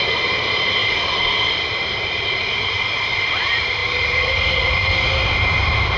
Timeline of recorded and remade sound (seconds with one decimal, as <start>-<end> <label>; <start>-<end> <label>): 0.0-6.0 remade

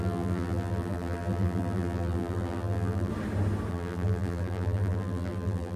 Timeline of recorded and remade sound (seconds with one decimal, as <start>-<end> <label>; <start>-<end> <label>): 0.0-3.1 remade; 3.1-3.7 recorded; 3.7-5.8 remade

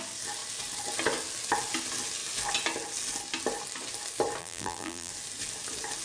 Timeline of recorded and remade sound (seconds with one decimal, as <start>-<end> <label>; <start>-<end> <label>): 0.0-4.4 recorded; 4.4-5.1 remade; 5.1-6.0 recorded

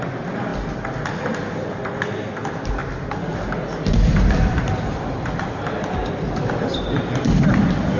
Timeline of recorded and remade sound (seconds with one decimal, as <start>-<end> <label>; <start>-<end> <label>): 0.0-2.8 recorded; 2.8-5.6 remade; 5.6-6.0 recorded; 6.0-7.6 remade; 7.6-8.0 recorded

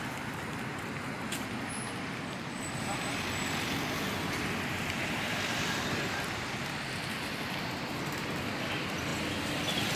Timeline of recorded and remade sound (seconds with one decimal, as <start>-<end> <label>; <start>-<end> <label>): 0.0-5.0 recorded; 5.0-7.3 remade; 7.3-10.0 recorded